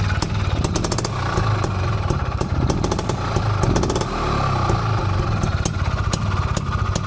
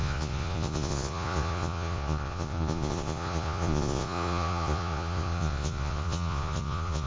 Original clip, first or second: first